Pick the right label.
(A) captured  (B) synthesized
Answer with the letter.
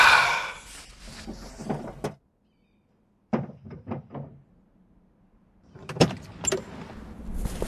A